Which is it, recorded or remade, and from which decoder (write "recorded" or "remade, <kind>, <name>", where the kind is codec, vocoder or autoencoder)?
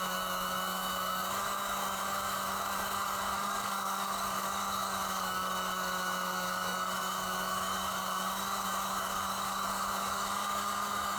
remade, codec, DAC